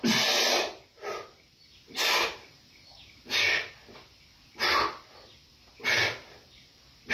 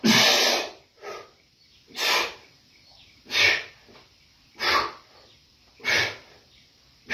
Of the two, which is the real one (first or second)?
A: first